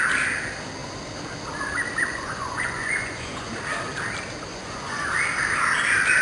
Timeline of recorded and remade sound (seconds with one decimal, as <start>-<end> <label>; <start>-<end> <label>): 0.0-2.1 recorded; 2.1-3.5 remade; 3.5-4.5 recorded; 4.5-5.1 remade; 5.1-6.2 recorded